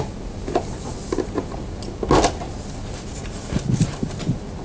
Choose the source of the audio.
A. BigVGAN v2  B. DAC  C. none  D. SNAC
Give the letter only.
C